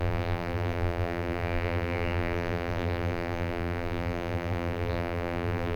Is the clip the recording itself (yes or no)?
no